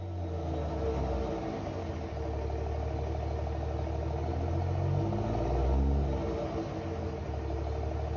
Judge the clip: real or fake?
real